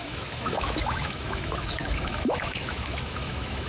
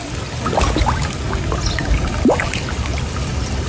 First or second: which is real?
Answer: second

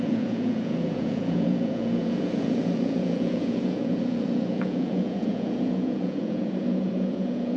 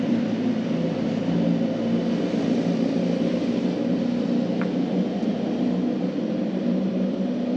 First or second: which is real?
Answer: second